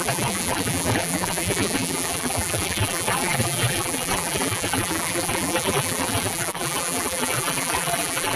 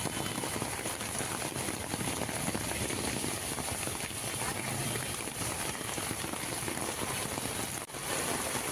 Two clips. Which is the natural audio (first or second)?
second